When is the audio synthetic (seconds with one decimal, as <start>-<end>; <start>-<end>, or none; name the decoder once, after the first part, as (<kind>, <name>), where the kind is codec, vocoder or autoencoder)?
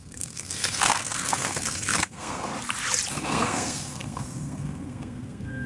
0.0-2.5 (codec, SNAC); 3.1-5.7